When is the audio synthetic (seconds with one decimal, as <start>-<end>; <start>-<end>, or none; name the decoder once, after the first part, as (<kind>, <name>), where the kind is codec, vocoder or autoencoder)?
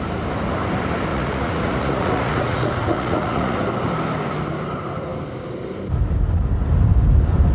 1.1-3.6 (vocoder, Vocos)